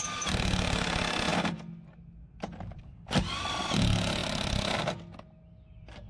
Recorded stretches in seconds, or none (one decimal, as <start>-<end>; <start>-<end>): 0.0-6.1